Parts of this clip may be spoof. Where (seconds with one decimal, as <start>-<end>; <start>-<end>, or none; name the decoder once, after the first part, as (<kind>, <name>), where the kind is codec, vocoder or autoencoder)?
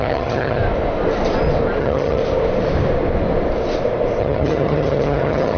0.0-0.6 (vocoder, HiFi-GAN); 1.8-2.2; 4.2-5.6